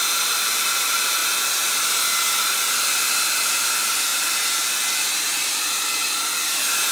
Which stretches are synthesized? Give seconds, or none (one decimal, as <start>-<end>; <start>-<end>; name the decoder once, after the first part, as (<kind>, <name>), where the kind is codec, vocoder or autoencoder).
none